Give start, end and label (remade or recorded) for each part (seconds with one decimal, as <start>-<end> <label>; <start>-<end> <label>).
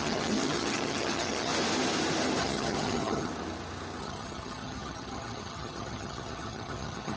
0.0-1.5 remade; 1.5-2.4 recorded; 2.4-3.3 remade; 3.3-4.0 recorded; 4.0-7.2 remade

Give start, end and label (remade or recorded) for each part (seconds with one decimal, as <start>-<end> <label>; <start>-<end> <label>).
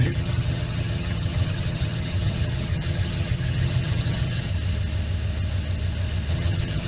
0.0-4.5 remade; 4.5-6.3 recorded; 6.3-6.9 remade